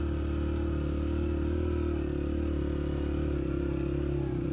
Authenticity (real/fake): real